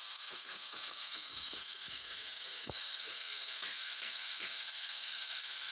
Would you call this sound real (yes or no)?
no